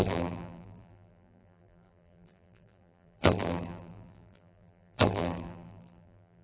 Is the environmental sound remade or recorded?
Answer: remade